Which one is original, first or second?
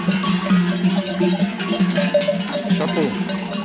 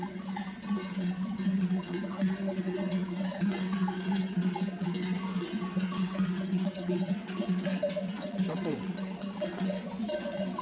first